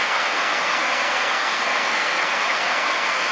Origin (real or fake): fake